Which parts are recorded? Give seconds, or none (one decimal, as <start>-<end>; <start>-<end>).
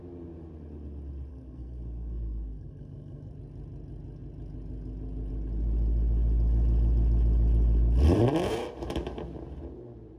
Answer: 0.0-1.3; 3.3-10.2